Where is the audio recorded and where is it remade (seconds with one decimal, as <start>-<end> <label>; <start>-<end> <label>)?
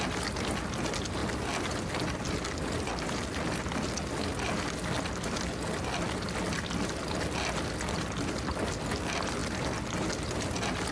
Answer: 0.0-1.2 recorded; 1.2-2.3 remade; 2.3-10.9 recorded